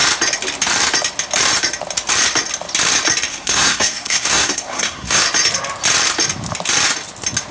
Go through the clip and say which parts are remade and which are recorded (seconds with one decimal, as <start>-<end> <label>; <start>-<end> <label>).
0.0-3.3 recorded; 3.3-5.2 remade; 5.2-7.5 recorded